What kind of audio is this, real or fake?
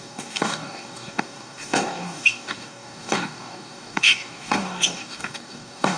fake